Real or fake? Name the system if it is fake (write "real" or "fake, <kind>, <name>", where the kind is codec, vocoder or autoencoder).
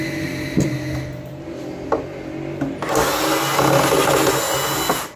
real